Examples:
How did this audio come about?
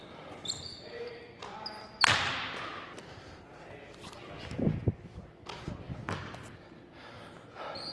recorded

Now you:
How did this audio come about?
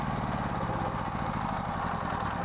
recorded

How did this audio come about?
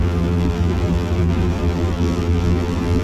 remade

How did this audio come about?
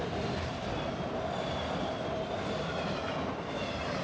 recorded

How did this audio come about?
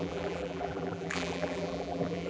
remade